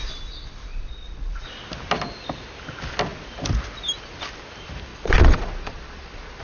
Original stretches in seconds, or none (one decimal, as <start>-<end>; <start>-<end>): 0.0-0.7; 1.5-4.9